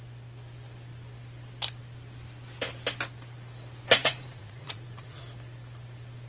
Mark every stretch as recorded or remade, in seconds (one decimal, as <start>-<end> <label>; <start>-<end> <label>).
0.0-4.0 recorded; 4.0-5.2 remade; 5.2-6.3 recorded